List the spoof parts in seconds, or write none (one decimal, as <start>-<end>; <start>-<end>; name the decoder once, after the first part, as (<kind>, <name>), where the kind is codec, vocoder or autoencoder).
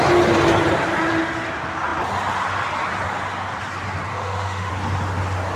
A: 4.1-4.7 (autoencoder, DAC-VAE)